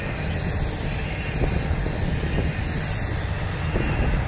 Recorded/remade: recorded